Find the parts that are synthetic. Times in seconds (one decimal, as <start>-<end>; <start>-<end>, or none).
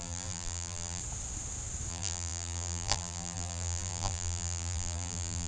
0.0-1.0; 1.9-5.5